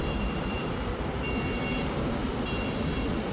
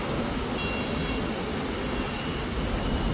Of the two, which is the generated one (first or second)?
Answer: first